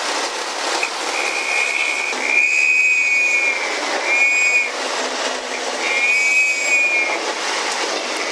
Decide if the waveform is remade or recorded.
recorded